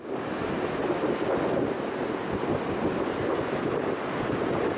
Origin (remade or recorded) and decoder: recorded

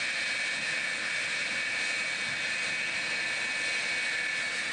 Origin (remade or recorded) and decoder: recorded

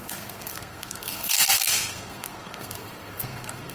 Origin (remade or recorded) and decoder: remade, codec, SNAC